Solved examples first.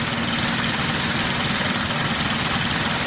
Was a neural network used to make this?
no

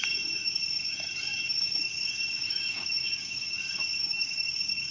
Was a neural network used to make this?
yes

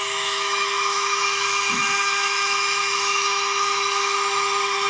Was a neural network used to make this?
yes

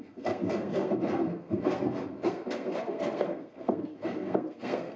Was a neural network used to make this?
yes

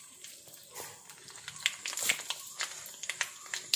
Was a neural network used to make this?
no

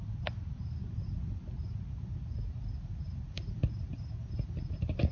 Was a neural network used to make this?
no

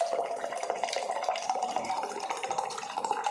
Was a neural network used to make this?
yes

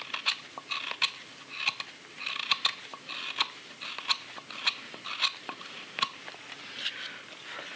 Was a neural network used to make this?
no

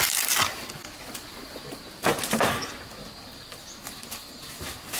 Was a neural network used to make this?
no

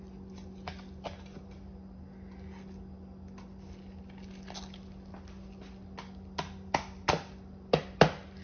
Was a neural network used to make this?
no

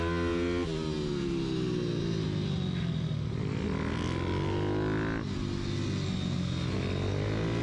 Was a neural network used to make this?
no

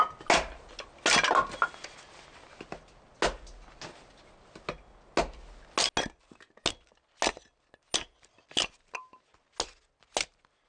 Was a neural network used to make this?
no